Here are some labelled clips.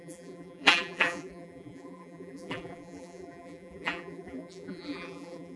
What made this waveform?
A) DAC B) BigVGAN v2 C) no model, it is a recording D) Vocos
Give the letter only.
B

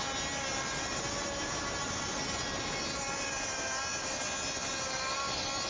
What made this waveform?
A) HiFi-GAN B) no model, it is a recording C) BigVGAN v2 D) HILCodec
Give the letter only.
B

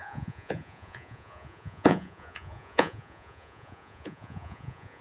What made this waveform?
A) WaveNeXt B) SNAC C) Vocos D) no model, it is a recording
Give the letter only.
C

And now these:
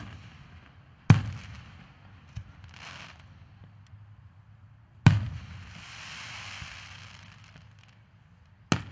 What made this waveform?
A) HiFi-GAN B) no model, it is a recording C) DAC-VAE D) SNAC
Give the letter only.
B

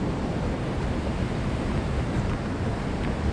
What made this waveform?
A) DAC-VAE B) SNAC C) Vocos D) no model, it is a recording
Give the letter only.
D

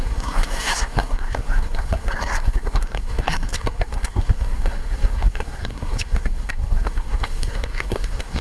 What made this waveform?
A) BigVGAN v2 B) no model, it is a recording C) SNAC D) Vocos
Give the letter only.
C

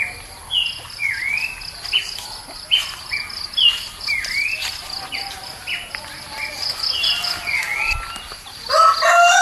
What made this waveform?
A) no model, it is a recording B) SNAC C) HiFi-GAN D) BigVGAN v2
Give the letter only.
A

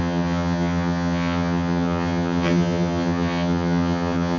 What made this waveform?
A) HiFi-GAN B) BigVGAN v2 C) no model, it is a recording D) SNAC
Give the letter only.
A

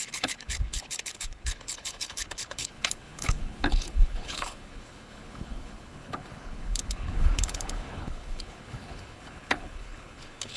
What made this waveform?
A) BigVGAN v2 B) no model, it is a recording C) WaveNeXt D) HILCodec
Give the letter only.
D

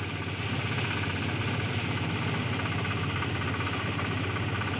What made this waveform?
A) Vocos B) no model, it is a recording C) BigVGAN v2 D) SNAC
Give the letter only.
B